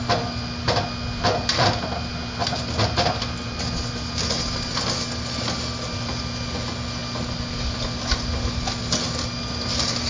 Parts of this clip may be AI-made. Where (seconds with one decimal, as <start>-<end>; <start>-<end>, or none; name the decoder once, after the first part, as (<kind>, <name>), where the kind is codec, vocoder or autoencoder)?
none